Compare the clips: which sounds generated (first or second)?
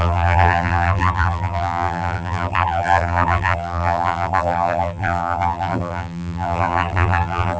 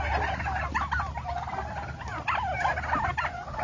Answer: first